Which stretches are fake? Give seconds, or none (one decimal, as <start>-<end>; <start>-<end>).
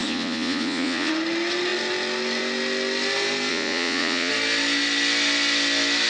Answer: 0.0-1.1; 3.5-4.3